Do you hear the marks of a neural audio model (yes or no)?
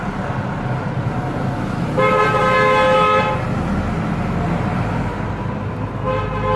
no